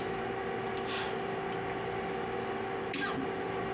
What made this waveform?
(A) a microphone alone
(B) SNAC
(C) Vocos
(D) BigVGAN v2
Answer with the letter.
A